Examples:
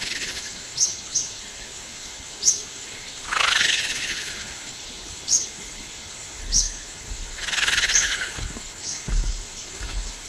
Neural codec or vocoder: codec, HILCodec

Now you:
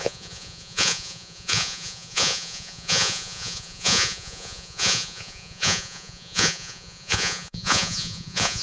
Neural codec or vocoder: vocoder, Vocos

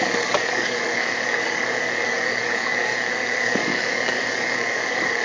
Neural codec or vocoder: codec, DAC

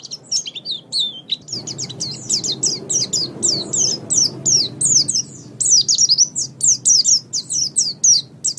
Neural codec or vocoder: none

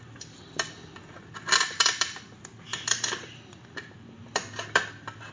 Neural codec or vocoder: vocoder, BigVGAN v2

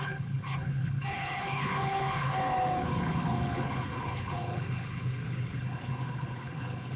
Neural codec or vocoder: codec, HILCodec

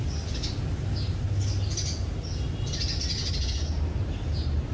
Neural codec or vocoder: none